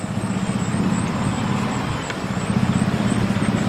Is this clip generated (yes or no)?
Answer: yes